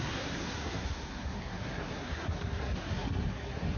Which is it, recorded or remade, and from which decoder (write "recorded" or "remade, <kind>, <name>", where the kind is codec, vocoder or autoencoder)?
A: remade, codec, SNAC